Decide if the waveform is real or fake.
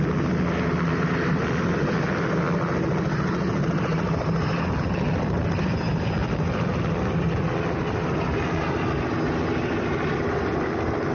real